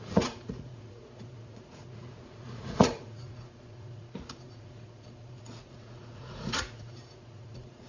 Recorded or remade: remade